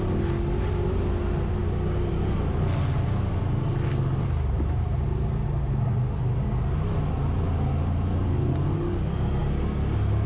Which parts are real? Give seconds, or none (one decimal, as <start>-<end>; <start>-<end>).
0.0-10.3